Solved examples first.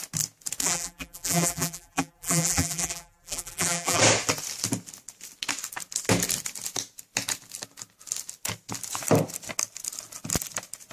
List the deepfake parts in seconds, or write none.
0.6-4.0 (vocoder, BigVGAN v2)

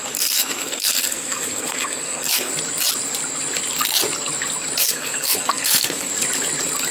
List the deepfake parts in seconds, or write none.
0.0-2.5 (codec, SNAC); 4.8-6.1

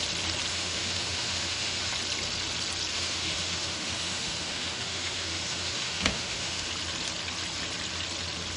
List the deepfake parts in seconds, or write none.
0.5-1.9 (autoencoder, DAC-VAE); 2.9-6.7

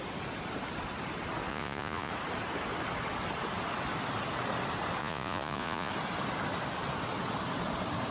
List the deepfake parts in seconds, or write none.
1.5-2.1 (vocoder, Vocos); 5.0-5.9

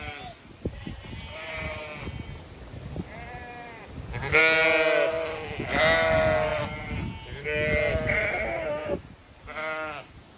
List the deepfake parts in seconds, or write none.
none

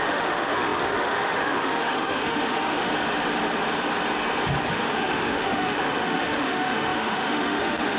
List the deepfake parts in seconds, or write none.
0.0-2.9 (autoencoder, DAC-VAE); 4.7-8.0

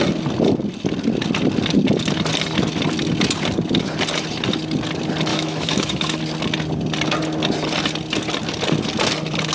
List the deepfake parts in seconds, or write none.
5.3-6.2 (autoencoder, DAC-VAE)